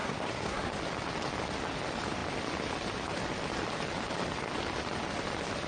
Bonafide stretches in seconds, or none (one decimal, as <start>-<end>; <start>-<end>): 0.7-5.7